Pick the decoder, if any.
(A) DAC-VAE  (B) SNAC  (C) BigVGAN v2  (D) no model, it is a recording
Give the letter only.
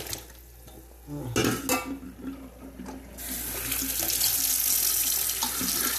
D